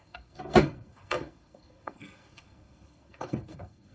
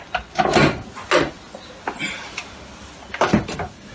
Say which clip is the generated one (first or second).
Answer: first